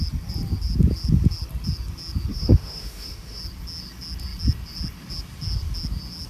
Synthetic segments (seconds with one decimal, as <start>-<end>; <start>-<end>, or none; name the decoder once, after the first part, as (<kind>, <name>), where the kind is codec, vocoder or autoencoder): 2.3-3.4 (autoencoder, DAC-VAE)